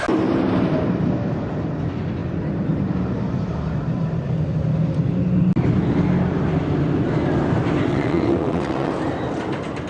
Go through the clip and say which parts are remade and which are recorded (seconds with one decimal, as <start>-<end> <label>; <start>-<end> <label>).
0.0-7.9 recorded; 7.9-8.9 remade; 8.9-9.9 recorded